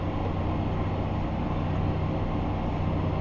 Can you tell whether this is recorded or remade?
recorded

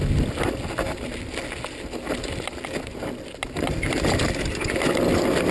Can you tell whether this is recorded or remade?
recorded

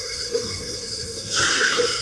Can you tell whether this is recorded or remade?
remade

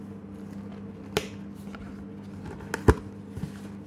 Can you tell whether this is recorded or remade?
recorded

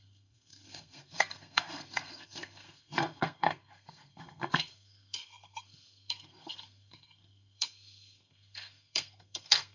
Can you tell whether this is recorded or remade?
remade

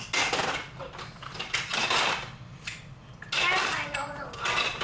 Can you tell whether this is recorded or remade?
recorded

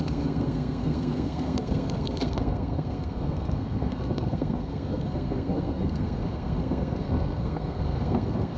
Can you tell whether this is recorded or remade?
remade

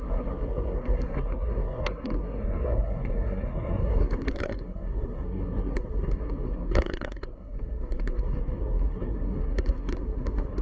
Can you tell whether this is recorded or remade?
remade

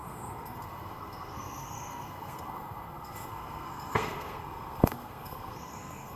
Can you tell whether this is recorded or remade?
remade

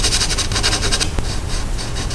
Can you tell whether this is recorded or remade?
recorded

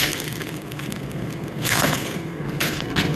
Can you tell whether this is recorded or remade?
remade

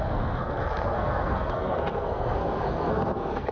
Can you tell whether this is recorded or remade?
remade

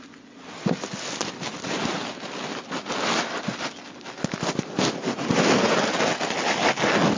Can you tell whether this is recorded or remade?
recorded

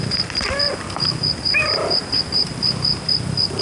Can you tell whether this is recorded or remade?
recorded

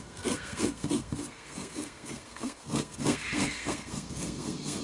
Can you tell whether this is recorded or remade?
remade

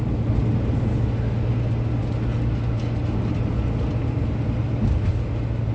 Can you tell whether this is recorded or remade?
recorded